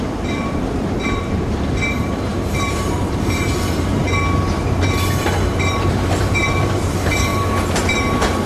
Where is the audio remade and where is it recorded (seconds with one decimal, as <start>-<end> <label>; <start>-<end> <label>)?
0.0-3.9 remade; 3.9-5.7 recorded; 5.7-8.5 remade